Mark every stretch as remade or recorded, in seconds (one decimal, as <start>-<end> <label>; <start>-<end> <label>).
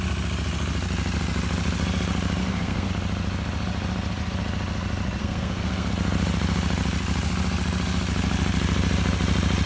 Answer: 0.0-2.4 recorded; 2.4-2.9 remade; 2.9-5.2 recorded; 5.2-5.9 remade; 5.9-9.7 recorded